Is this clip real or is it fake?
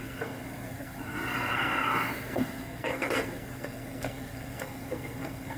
fake